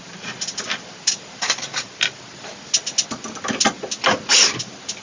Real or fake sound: real